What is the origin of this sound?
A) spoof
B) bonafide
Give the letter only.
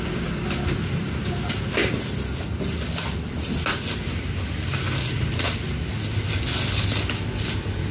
B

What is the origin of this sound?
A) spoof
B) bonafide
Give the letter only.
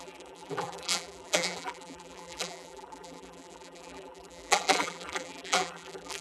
A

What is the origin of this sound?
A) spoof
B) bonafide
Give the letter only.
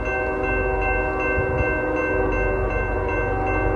B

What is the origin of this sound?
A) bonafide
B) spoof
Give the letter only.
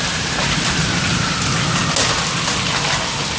A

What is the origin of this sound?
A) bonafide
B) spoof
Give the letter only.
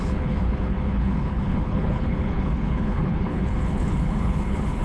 B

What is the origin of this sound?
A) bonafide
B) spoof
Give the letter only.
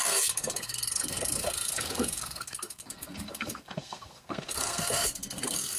B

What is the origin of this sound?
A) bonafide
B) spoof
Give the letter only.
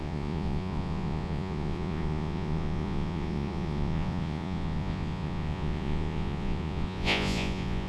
B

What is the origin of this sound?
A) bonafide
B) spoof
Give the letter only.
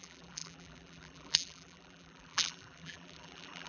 B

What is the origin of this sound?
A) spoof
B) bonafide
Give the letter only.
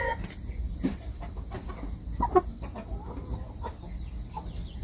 B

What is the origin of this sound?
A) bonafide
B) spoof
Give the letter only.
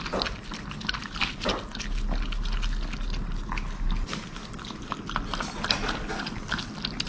A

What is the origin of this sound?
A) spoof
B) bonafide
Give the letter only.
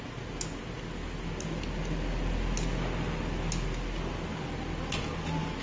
B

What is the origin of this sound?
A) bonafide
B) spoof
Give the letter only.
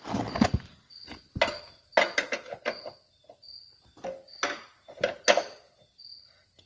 A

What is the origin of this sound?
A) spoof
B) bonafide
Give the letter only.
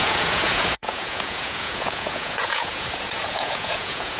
A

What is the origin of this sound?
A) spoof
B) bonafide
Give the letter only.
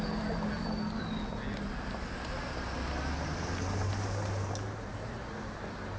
B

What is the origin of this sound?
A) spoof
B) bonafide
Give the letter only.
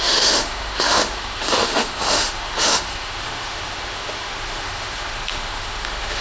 A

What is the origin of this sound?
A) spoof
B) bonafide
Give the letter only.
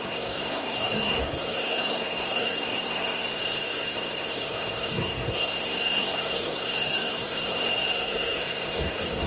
A